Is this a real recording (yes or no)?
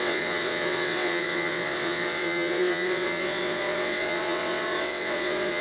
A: no